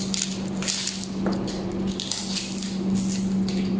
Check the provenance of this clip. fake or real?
real